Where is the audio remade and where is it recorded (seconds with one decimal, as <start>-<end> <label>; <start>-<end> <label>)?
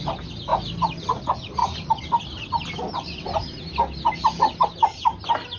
0.0-1.6 recorded; 1.6-2.2 remade; 2.2-5.6 recorded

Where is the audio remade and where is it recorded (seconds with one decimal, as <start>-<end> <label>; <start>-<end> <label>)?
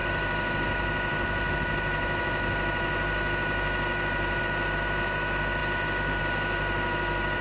0.0-7.4 recorded